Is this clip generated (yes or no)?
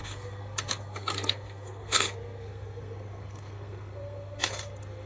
yes